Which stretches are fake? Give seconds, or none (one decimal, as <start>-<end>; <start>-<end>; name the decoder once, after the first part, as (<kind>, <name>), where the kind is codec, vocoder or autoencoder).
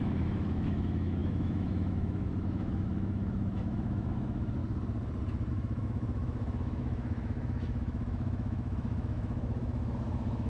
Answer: 0.0-4.6 (autoencoder, DAC-VAE); 5.5-10.5